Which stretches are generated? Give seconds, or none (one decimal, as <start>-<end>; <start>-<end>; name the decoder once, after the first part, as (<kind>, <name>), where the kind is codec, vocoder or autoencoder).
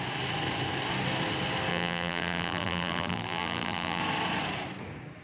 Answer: 1.7-4.0 (vocoder, BigVGAN v2)